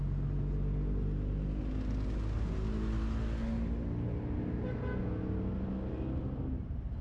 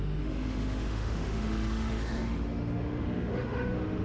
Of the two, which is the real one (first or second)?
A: first